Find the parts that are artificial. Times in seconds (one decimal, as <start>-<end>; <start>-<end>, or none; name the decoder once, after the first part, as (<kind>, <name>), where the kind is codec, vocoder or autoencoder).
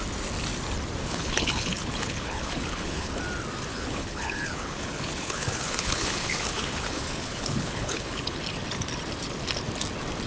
1.0-3.2 (codec, HILCodec); 3.7-8.4